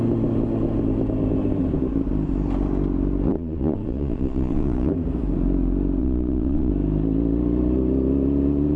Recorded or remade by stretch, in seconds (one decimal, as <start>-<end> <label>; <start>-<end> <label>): 0.0-3.3 recorded; 3.3-4.9 remade; 4.9-6.0 recorded; 6.0-6.7 remade; 6.7-8.8 recorded